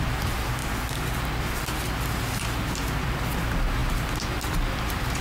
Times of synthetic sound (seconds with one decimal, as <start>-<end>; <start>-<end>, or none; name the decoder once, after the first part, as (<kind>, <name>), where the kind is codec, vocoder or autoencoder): none